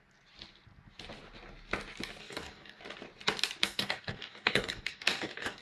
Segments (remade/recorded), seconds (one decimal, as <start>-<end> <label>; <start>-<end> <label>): 0.0-2.2 recorded; 2.2-2.8 remade; 2.8-3.6 recorded; 3.6-5.6 remade